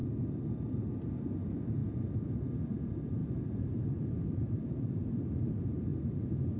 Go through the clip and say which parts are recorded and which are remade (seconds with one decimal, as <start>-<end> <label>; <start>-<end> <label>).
0.0-1.2 recorded; 1.2-1.8 remade; 1.8-2.7 recorded; 2.7-6.6 remade